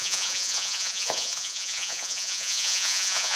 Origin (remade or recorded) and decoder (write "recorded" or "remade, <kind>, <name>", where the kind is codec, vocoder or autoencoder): remade, vocoder, Vocos